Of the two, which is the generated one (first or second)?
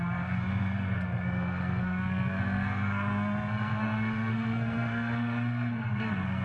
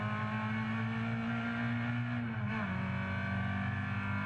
first